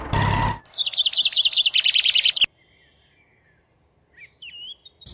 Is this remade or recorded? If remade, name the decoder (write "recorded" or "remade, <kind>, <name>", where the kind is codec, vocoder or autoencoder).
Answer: recorded